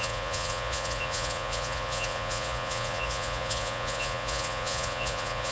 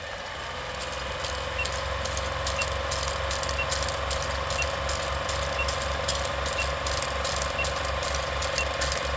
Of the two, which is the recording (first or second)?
second